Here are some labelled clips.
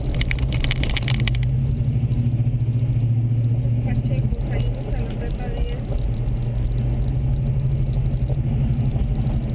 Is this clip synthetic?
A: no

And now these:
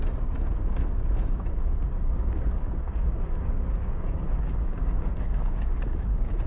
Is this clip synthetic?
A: yes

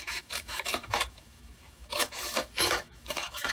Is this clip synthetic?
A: yes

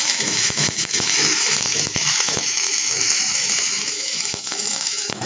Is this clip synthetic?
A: yes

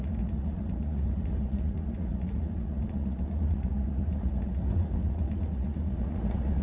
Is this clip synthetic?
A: yes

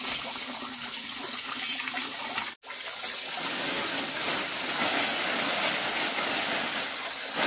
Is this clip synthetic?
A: no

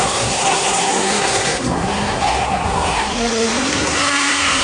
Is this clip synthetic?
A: yes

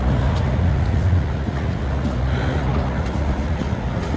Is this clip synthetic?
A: yes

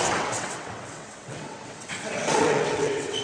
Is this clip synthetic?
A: yes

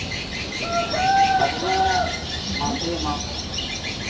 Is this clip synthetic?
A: no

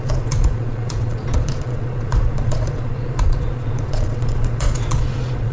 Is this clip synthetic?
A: yes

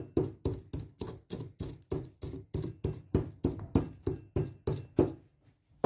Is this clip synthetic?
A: no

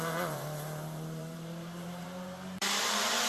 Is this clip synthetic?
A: yes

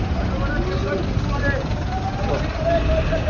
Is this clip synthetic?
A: no